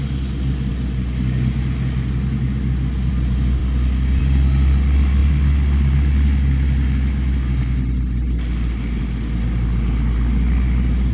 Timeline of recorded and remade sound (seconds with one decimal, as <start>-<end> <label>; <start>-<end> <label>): 0.0-11.1 recorded